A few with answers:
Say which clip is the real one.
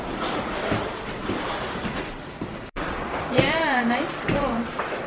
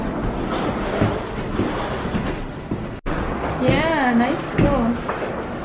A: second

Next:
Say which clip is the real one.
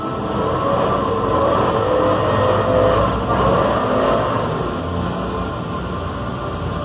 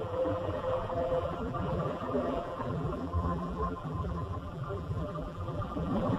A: first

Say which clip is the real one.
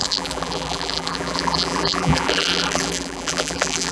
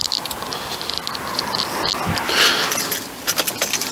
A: second